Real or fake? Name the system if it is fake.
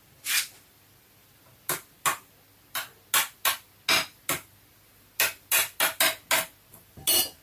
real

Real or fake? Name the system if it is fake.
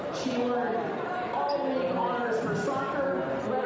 real